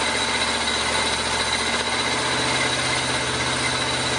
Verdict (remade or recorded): recorded